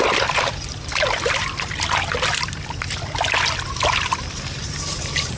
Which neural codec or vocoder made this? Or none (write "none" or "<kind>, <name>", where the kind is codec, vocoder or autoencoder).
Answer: none